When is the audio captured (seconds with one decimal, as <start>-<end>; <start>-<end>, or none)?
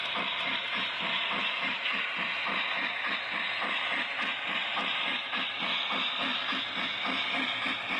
0.0-1.4; 2.0-8.0